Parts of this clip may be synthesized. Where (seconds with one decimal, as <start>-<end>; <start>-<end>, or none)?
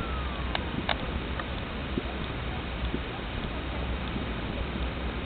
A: none